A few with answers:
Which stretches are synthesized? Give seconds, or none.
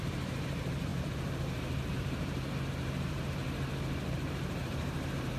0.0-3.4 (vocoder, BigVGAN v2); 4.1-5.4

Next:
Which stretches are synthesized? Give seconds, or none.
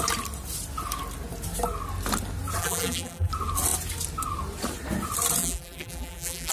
2.6-3.3 (vocoder, BigVGAN v2); 5.4-6.5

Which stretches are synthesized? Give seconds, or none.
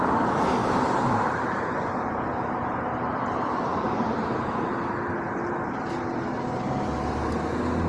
0.6-4.9 (vocoder, BigVGAN v2)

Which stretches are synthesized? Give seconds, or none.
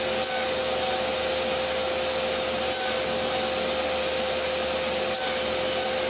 none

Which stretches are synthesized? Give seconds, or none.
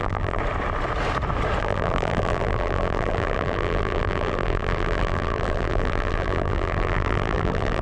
0.0-0.4 (vocoder, BigVGAN v2); 1.6-7.8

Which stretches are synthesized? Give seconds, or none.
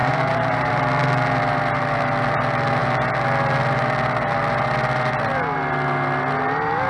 0.0-0.8 (vocoder, BigVGAN v2)